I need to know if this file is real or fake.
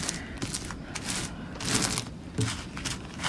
real